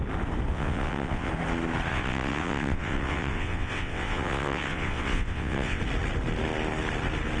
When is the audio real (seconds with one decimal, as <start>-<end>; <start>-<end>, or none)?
0.0-0.5; 1.3-1.9; 5.8-7.4